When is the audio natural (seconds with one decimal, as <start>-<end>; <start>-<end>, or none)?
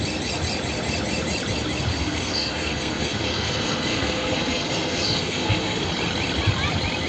0.0-1.9; 5.9-7.1